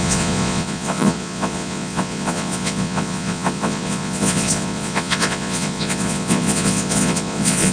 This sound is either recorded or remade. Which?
remade